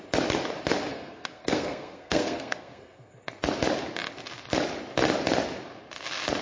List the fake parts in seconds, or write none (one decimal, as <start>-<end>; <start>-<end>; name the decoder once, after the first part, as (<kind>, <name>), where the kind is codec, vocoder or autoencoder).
0.9-3.1 (codec, SNAC)